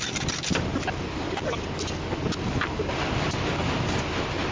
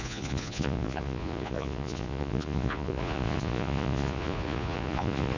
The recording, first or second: first